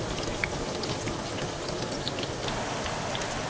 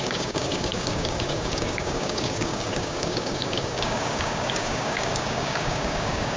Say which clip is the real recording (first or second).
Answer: first